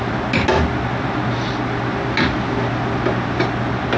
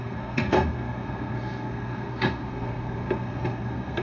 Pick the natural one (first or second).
first